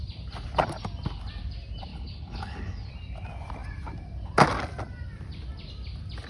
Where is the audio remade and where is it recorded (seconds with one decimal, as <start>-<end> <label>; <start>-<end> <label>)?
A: 0.0-1.9 recorded; 1.9-2.9 remade; 2.9-6.3 recorded